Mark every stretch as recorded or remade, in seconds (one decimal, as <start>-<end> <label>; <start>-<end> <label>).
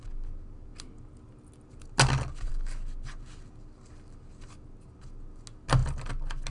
0.0-6.5 recorded